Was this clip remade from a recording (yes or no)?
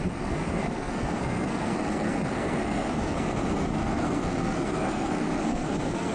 yes